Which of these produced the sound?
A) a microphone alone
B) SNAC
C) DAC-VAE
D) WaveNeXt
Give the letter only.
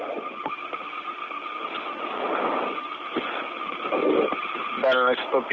A